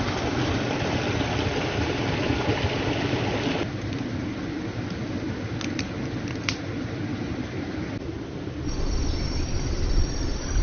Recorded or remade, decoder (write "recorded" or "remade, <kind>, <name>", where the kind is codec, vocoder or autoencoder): recorded